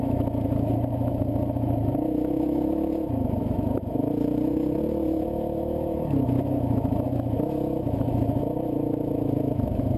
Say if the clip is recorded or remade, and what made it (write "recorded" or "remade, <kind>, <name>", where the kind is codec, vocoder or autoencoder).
remade, autoencoder, DAC-VAE